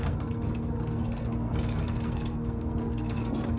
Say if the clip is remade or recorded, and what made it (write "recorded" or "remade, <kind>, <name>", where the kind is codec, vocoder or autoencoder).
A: remade, codec, SNAC